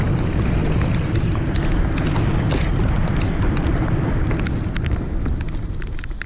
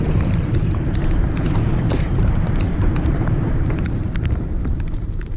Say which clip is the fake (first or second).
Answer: second